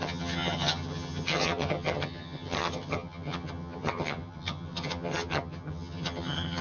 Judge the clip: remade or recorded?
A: remade